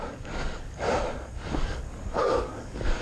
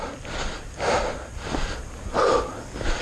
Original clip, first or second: second